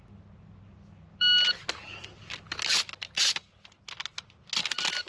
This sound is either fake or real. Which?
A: real